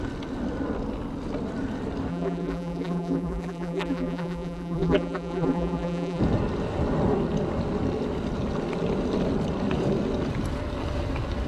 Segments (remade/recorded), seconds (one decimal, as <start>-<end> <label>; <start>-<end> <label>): 0.0-2.1 recorded; 2.1-6.2 remade; 6.2-11.5 recorded